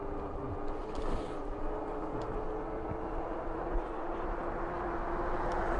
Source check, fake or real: real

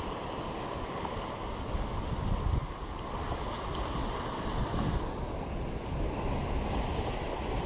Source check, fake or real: real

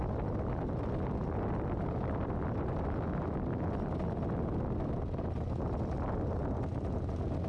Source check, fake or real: real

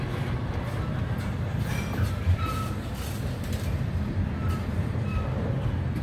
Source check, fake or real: real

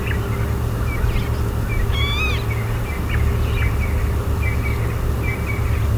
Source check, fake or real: real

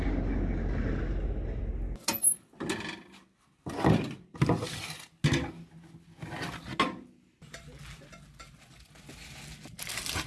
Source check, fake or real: real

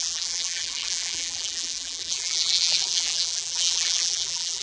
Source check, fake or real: fake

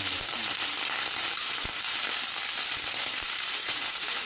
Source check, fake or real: fake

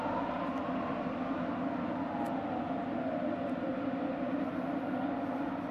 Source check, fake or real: real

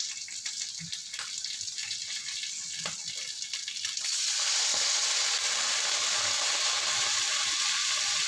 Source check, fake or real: real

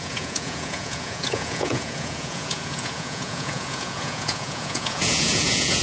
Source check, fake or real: fake